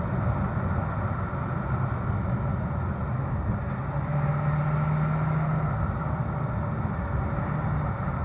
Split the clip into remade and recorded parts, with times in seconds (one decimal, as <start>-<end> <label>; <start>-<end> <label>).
0.0-3.8 recorded; 3.8-4.3 remade; 4.3-8.2 recorded